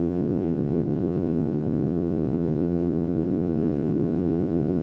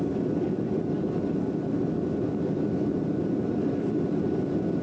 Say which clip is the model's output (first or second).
first